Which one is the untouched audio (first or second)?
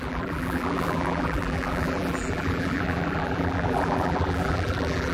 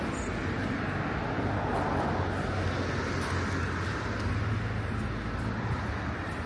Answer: second